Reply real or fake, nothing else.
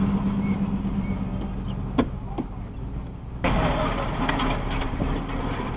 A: real